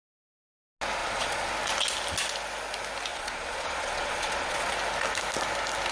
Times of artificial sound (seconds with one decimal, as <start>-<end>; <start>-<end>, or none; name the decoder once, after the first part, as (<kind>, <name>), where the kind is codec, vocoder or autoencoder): 1.0-1.5 (vocoder, Vocos); 3.1-4.7